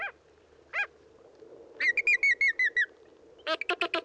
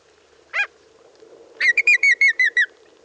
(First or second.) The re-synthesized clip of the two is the second